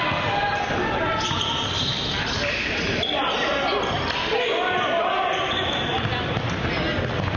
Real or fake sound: real